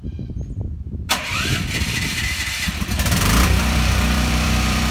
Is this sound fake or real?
fake